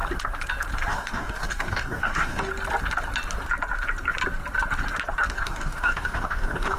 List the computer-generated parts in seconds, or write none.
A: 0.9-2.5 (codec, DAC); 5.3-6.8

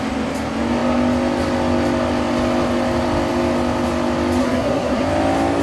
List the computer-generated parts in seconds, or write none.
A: 4.4-5.0 (codec, SNAC)

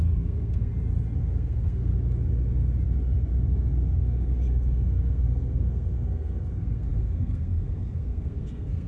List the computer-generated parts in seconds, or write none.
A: 0.0-0.7 (codec, SNAC); 1.2-1.9; 3.5-8.9